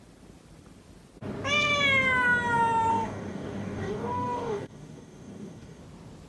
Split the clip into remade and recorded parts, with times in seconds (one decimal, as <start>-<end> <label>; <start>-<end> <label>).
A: 0.0-2.9 recorded; 2.9-5.8 remade; 5.8-6.3 recorded